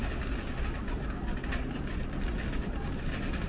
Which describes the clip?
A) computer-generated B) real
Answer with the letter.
B